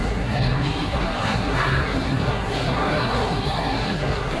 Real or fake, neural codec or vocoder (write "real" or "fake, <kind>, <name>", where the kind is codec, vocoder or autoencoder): fake, codec, SNAC